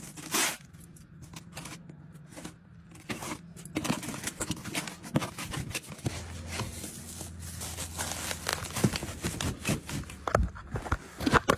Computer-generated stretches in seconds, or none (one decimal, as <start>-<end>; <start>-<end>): none